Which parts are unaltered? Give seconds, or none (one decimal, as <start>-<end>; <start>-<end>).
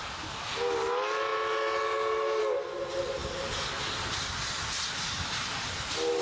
0.0-6.2